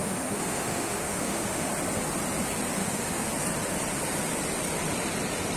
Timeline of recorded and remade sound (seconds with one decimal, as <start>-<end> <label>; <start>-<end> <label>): 0.0-1.7 remade; 1.7-2.8 recorded; 2.8-3.3 remade; 3.3-5.6 recorded

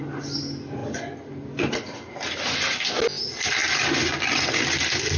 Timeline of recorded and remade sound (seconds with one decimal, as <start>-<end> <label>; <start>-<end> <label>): 0.0-5.2 recorded

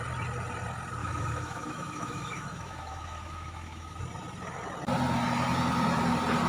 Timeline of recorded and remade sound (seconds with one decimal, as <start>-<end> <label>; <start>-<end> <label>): 0.0-1.0 recorded; 1.0-4.0 remade; 4.0-6.5 recorded

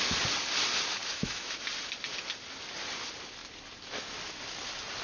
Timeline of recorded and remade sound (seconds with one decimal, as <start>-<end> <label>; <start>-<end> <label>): 0.0-1.0 recorded; 1.0-1.6 remade; 1.6-5.0 recorded

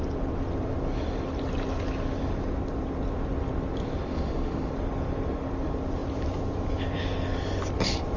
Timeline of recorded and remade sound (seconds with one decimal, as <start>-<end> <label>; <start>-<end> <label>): 0.0-4.1 recorded; 4.1-4.7 remade; 4.7-8.2 recorded

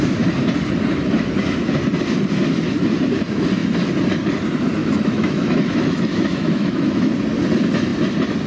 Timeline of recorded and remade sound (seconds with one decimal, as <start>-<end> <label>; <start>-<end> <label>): 0.0-4.8 recorded; 4.8-7.1 remade; 7.1-8.5 recorded